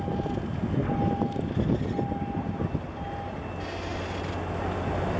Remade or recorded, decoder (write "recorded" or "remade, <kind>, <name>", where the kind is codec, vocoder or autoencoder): recorded